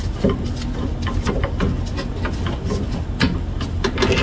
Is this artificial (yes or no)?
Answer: no